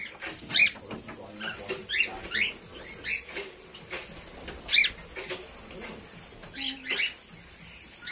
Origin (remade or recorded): recorded